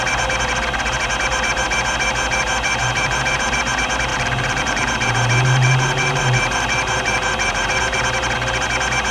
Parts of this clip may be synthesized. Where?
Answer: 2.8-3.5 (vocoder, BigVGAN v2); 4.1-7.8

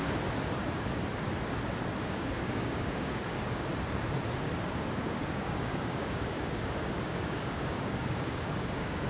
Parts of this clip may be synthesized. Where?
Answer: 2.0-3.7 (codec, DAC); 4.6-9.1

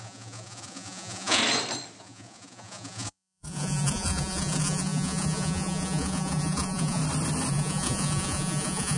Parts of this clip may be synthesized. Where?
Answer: 0.0-1.4 (vocoder, Vocos); 2.0-7.0; 7.5-9.0

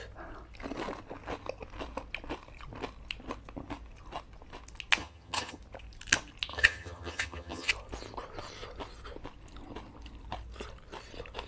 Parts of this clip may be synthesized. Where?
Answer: 5.0-5.6 (vocoder, HiFi-GAN); 6.5-7.7

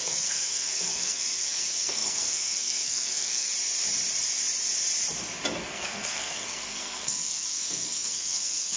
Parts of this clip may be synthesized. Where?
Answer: 0.0-3.5 (codec, SNAC); 5.7-8.8